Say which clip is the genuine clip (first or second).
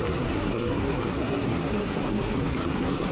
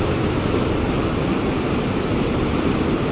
second